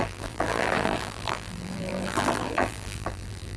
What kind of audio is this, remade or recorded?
remade